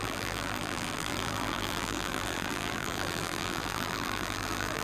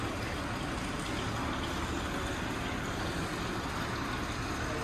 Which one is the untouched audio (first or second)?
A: second